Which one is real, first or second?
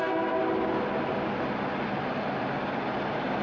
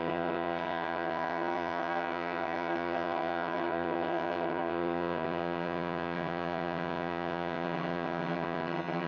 first